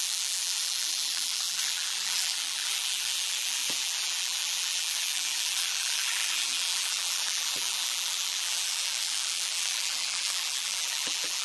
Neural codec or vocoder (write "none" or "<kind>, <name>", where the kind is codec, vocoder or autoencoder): vocoder, BigVGAN v2